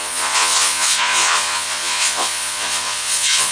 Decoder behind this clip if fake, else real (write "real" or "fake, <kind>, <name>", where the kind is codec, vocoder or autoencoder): fake, vocoder, Vocos